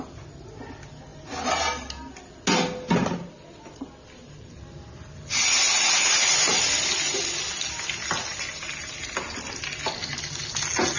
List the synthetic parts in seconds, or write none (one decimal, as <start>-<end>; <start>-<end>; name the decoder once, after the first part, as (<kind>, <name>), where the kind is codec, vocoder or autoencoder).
none